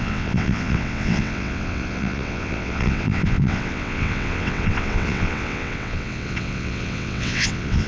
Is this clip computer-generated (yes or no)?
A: yes